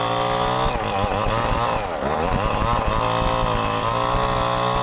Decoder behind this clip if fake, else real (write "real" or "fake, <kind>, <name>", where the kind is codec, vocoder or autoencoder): real